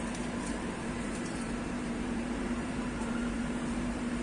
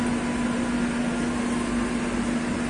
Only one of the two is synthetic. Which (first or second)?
first